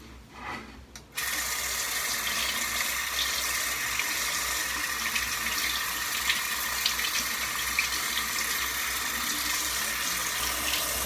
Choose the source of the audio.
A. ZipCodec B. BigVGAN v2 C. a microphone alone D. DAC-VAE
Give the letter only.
C